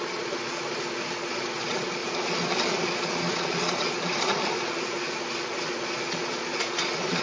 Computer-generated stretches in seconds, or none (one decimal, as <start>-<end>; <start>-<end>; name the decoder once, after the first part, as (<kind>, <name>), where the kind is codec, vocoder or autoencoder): 0.0-7.2 (vocoder, Vocos)